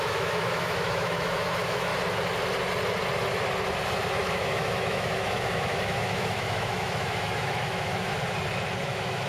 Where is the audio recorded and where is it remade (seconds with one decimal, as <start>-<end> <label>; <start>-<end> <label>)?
0.0-1.9 remade; 1.9-4.1 recorded; 4.1-8.1 remade; 8.1-8.8 recorded; 8.8-9.3 remade

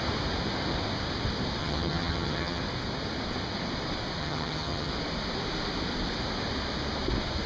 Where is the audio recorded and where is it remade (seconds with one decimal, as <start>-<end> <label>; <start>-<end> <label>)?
0.0-1.6 recorded; 1.6-2.6 remade; 2.6-4.2 recorded; 4.2-4.9 remade; 4.9-7.5 recorded

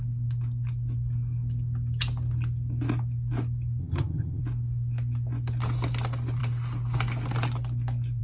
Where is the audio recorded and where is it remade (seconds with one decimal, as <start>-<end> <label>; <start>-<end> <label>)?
0.0-3.8 recorded; 3.8-4.4 remade; 4.4-8.2 recorded

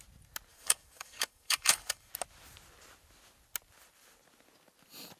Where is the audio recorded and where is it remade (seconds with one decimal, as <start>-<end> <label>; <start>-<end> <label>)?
0.0-0.5 recorded; 0.5-2.1 remade; 2.1-5.2 recorded

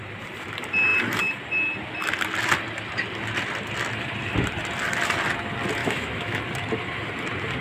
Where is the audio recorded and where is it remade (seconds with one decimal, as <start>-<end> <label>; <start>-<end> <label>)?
0.0-5.8 recorded; 5.8-6.4 remade; 6.4-7.6 recorded

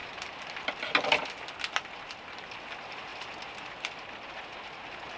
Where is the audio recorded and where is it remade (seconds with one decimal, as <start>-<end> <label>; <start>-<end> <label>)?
0.0-5.2 recorded

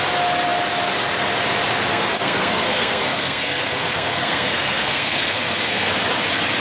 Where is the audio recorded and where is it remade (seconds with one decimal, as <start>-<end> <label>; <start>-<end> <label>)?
0.0-1.9 recorded; 1.9-5.9 remade; 5.9-6.6 recorded